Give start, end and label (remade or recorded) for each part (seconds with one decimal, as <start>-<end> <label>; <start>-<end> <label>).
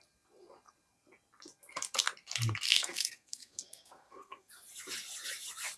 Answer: 0.0-2.7 recorded; 2.7-4.5 remade; 4.5-5.8 recorded